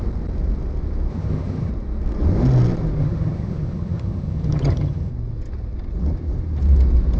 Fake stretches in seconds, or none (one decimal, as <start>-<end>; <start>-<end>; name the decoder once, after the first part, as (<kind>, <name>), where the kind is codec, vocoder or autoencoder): 1.1-1.7 (vocoder, HiFi-GAN); 3.0-5.1